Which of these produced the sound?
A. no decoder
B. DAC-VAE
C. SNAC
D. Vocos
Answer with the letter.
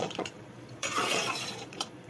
D